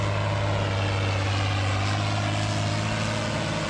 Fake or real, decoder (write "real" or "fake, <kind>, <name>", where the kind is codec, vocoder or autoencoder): real